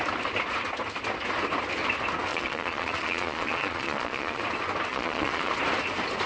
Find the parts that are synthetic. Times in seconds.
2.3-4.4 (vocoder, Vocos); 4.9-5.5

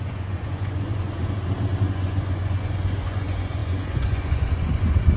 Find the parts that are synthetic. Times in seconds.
0.0-1.2 (vocoder, Vocos); 1.8-5.2

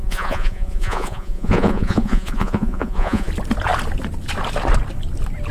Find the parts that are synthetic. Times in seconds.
0.0-3.3 (vocoder, Vocos)

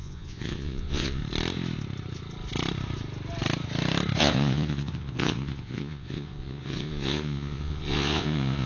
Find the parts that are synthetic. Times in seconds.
0.0-1.2 (vocoder, Vocos); 4.2-8.7

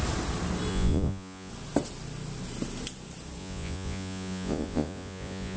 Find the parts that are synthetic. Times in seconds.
0.7-1.5 (vocoder, Vocos); 3.4-5.6

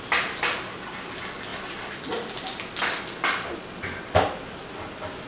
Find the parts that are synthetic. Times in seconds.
none

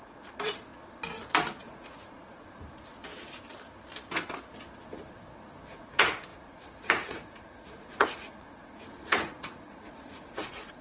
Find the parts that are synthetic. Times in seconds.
0.0-0.7 (vocoder, Vocos); 1.6-2.9; 5.7-10.8

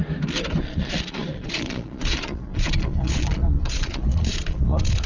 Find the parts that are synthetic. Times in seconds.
0.6-5.1 (vocoder, Vocos)